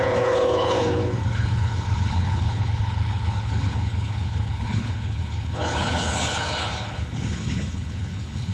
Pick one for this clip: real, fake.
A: fake